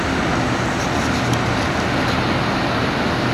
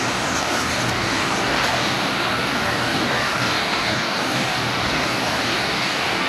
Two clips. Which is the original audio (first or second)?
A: first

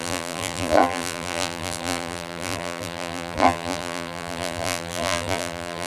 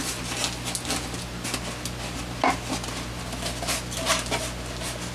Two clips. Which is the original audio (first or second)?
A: second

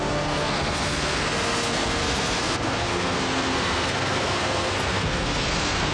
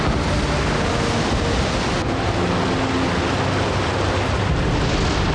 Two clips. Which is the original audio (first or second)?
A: second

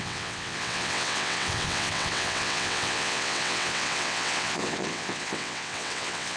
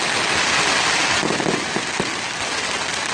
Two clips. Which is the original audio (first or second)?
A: second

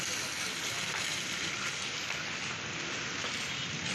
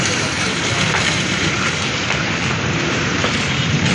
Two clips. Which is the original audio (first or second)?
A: first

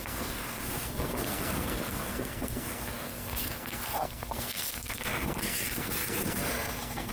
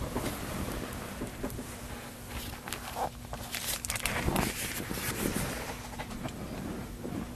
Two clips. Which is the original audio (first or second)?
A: second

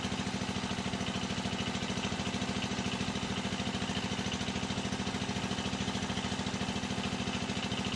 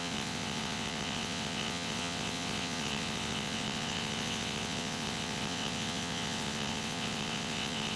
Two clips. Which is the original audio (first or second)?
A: first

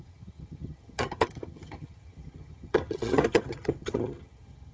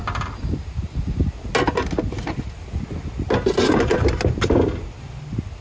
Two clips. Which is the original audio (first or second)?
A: second